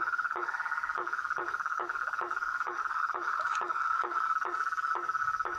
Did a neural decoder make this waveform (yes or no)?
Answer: yes